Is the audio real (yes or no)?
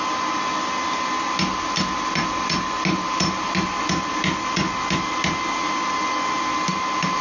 yes